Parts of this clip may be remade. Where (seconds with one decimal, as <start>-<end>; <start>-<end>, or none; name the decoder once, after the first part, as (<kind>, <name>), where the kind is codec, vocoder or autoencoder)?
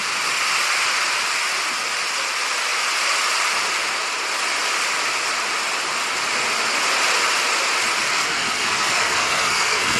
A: 8.0-10.0 (codec, SNAC)